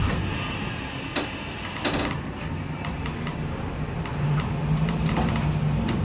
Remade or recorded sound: recorded